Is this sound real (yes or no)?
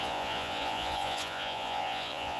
no